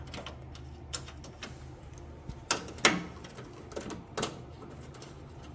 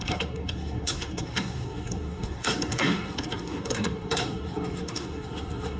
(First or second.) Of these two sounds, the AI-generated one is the second